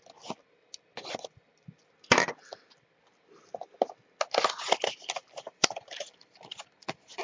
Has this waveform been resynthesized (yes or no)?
no